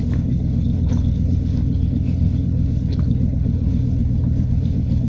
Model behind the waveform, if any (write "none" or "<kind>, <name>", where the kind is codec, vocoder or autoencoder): codec, HILCodec